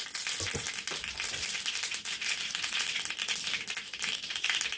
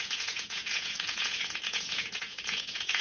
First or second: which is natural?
first